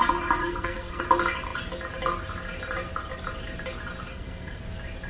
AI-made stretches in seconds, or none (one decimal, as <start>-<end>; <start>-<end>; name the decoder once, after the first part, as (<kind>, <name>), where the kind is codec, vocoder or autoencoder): 0.4-1.0 (codec, SNAC); 4.1-4.6